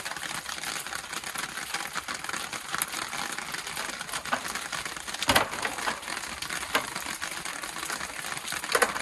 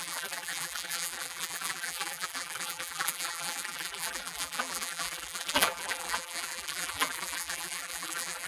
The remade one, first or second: second